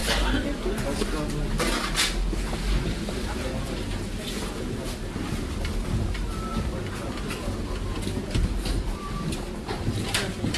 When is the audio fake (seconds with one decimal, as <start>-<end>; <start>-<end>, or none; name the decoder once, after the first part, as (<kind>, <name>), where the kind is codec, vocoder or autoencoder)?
none